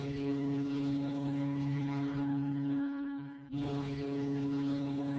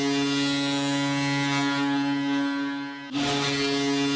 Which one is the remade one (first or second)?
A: first